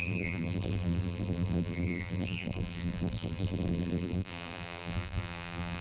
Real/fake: fake